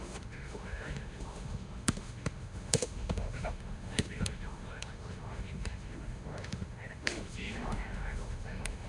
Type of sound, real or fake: fake